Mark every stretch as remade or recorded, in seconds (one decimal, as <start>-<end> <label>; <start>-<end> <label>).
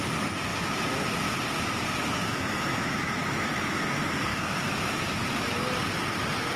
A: 0.0-2.0 recorded; 2.0-3.8 remade; 3.8-4.3 recorded; 4.3-5.0 remade; 5.0-6.6 recorded